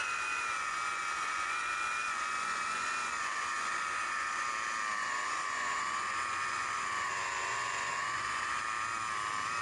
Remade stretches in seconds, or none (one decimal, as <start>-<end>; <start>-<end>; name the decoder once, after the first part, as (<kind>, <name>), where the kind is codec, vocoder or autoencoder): 0.0-4.5 (vocoder, Vocos); 5.0-8.6